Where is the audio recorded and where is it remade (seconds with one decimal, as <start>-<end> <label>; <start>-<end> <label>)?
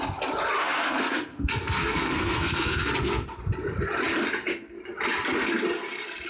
0.0-0.6 recorded; 0.6-3.3 remade; 3.3-6.3 recorded